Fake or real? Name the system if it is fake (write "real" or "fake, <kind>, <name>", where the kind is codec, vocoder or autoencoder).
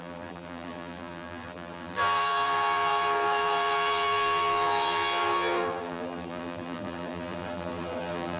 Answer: fake, vocoder, BigVGAN v2